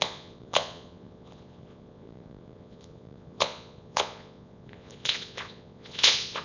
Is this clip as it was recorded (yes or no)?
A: no